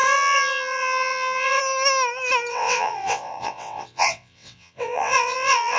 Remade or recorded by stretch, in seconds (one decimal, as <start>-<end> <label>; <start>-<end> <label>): 0.0-1.6 remade; 1.6-2.5 recorded; 2.5-5.8 remade